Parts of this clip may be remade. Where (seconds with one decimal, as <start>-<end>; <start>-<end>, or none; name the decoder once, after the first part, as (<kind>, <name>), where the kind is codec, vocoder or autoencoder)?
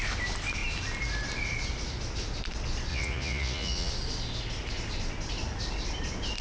2.9-3.9 (vocoder, Vocos)